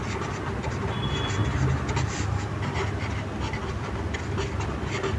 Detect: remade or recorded recorded